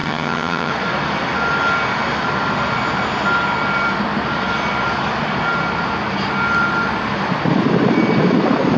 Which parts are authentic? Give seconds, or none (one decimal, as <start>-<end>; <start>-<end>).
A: 0.7-8.8